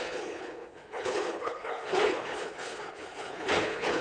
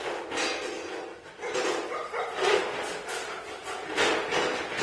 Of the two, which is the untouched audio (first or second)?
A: second